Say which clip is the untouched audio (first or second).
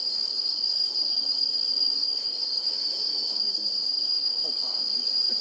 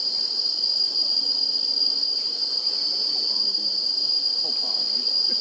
second